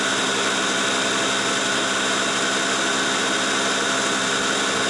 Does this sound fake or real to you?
real